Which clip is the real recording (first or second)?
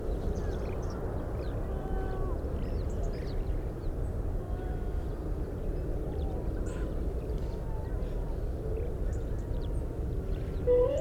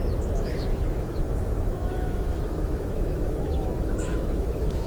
first